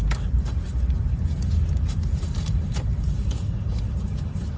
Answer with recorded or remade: remade